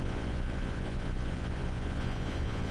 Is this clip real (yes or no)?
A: no